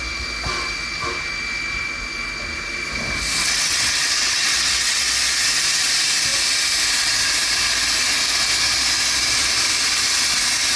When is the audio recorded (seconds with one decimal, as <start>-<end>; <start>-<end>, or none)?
0.0-3.4; 5.1-10.8